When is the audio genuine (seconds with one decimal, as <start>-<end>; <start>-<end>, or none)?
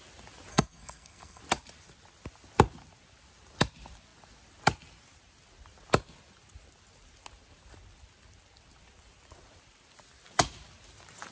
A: 0.0-0.5; 1.4-11.3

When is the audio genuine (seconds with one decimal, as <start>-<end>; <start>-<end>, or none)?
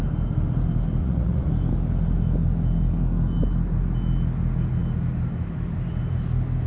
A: 0.0-1.0; 1.5-6.7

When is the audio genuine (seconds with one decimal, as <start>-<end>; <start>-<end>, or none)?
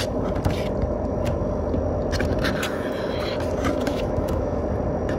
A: 0.0-3.9; 4.6-5.2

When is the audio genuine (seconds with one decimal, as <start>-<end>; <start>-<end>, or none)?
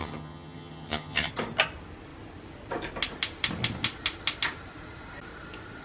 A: 1.3-5.8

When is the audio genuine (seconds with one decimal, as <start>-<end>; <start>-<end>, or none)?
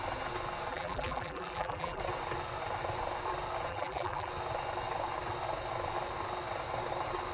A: 0.0-0.7; 2.0-3.7; 4.3-7.3